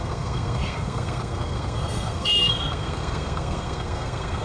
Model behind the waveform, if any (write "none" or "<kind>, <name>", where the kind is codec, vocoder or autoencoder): codec, SNAC